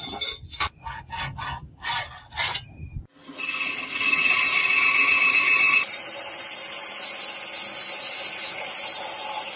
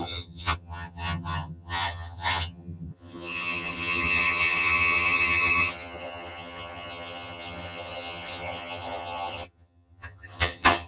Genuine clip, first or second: first